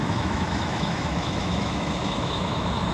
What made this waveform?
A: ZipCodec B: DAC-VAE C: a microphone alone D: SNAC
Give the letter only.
B